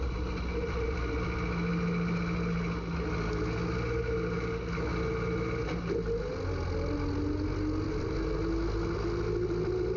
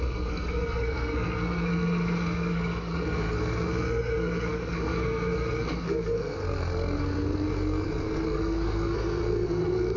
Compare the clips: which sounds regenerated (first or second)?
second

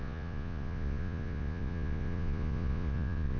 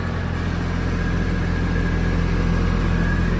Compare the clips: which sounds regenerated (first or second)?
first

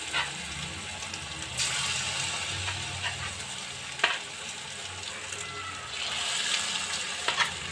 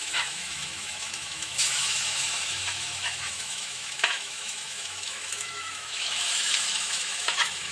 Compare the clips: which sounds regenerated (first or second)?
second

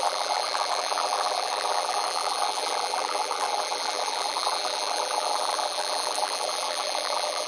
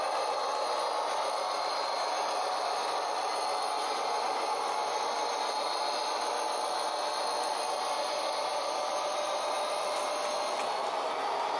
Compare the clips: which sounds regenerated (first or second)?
first